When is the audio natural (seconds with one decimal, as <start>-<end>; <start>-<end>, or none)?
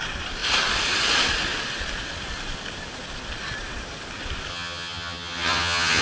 0.0-4.5